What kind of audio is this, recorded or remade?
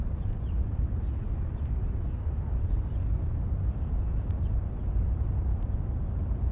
remade